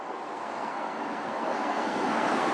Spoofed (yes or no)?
yes